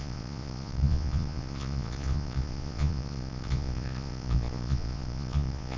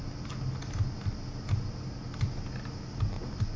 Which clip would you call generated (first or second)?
first